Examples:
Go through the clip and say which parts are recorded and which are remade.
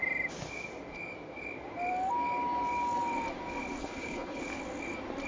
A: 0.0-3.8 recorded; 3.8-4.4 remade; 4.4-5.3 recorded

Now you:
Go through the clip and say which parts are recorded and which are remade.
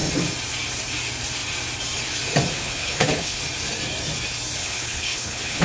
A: 0.0-2.5 recorded; 2.5-3.4 remade; 3.4-4.6 recorded; 4.6-5.6 remade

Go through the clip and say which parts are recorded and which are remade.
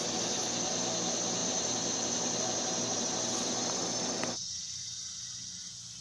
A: 0.0-6.0 recorded